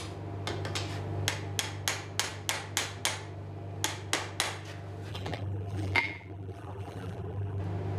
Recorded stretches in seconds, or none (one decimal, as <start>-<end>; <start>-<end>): 0.0-5.1; 7.6-8.0